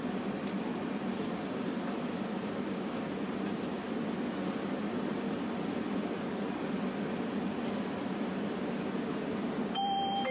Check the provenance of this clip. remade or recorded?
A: remade